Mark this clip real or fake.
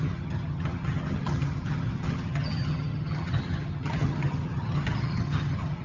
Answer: fake